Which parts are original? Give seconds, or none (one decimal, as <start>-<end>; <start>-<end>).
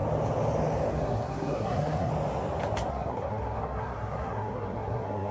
0.0-0.9; 2.1-2.9